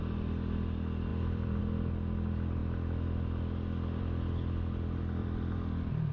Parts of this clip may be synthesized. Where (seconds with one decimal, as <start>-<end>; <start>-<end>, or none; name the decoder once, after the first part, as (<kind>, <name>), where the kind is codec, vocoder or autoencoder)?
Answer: 1.1-1.6 (vocoder, BigVGAN v2); 5.2-6.1